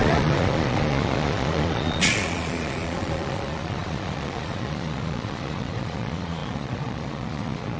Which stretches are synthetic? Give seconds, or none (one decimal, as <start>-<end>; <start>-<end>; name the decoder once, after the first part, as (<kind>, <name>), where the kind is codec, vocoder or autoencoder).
0.0-7.8 (vocoder, Vocos)